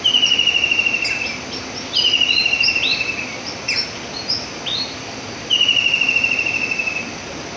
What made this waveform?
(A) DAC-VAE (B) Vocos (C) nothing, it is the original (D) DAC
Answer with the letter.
C